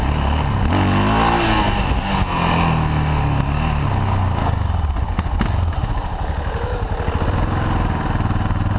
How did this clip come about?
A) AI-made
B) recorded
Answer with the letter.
B